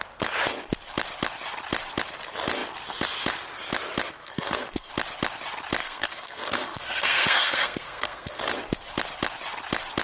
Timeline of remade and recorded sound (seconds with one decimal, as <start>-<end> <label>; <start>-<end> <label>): 0.0-4.2 recorded; 4.2-4.9 remade; 4.9-5.8 recorded; 5.8-8.4 remade; 8.4-10.0 recorded